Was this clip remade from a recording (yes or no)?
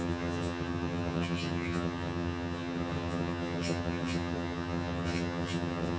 yes